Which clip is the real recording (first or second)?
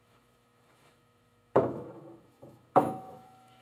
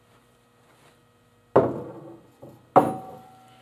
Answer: second